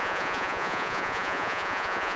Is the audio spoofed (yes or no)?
yes